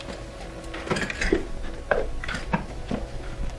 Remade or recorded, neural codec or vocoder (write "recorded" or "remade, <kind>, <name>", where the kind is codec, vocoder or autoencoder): recorded